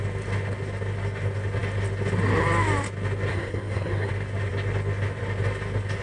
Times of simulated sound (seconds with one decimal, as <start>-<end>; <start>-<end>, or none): 3.3-4.1